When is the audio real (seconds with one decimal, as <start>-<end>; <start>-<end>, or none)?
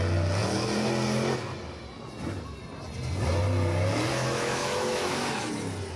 0.0-4.1; 5.5-6.0